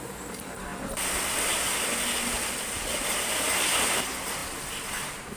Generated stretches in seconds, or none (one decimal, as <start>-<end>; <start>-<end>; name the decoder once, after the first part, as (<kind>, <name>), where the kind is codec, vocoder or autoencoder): none